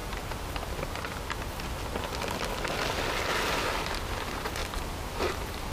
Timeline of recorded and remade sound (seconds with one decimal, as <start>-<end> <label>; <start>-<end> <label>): 0.0-3.4 recorded; 3.4-4.6 remade; 4.6-5.2 recorded; 5.2-5.7 remade